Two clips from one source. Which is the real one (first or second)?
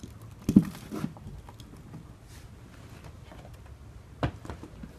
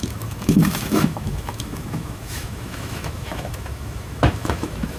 first